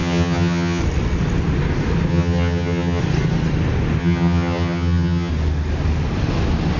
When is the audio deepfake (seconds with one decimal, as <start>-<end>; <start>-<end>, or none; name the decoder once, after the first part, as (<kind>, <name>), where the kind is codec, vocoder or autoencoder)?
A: 0.0-0.8 (vocoder, HiFi-GAN); 2.1-3.0; 4.0-5.3

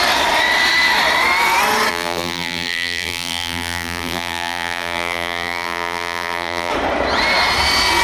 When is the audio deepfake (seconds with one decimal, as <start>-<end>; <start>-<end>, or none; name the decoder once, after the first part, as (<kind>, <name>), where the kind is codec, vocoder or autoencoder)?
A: 1.9-6.7 (vocoder, BigVGAN v2)

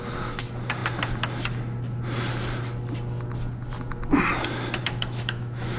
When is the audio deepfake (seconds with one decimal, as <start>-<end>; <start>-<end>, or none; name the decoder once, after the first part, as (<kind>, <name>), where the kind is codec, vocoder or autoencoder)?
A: 4.8-5.8 (autoencoder, DAC-VAE)

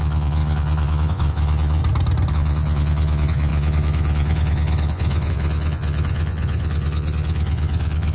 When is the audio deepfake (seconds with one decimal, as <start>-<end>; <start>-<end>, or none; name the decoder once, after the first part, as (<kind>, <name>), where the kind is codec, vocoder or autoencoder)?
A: 0.0-1.8 (vocoder, Vocos); 2.3-8.1

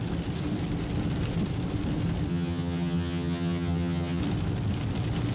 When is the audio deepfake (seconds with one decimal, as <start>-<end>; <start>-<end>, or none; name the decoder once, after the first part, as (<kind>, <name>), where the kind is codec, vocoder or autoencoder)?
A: 2.3-4.2 (vocoder, HiFi-GAN)

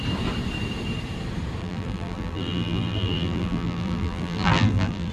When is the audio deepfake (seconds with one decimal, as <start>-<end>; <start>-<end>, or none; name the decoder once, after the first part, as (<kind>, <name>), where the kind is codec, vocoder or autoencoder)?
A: 1.6-5.1 (vocoder, BigVGAN v2)

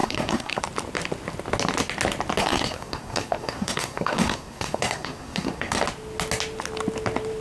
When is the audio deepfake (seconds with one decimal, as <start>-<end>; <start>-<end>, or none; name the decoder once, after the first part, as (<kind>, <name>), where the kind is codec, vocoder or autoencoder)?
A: 0.0-0.6 (codec, SNAC); 2.4-5.8